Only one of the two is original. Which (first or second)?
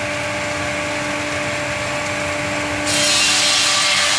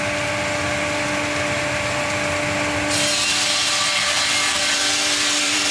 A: first